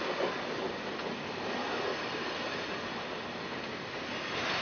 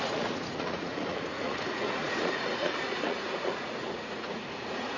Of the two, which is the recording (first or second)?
first